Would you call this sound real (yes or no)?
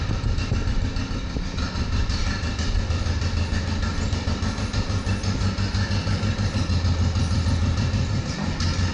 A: yes